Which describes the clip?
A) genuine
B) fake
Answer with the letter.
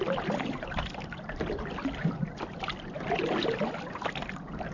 A